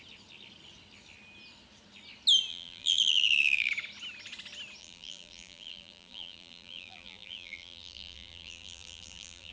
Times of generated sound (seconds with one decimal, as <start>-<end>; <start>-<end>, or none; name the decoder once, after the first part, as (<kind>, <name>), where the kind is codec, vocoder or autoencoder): 2.5-3.7 (vocoder, BigVGAN v2); 4.8-9.5